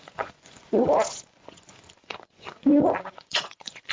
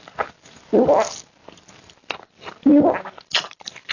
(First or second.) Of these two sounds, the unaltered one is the second